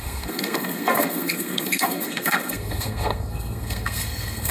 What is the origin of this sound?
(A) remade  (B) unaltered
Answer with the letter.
A